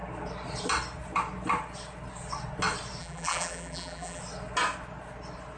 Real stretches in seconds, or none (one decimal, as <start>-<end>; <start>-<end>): 0.0-3.0; 4.2-5.6